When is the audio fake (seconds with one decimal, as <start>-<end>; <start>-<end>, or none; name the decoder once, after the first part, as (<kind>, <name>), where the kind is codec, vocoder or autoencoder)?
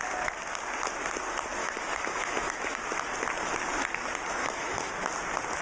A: 1.6-2.8 (autoencoder, DAC-VAE); 4.4-4.9